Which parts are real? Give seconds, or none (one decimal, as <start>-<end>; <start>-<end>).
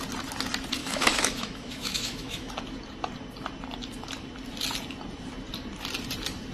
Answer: 0.0-0.8; 2.5-6.5